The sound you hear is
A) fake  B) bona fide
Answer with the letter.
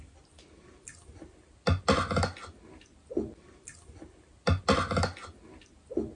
B